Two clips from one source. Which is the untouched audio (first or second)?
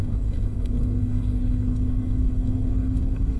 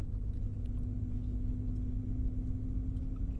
second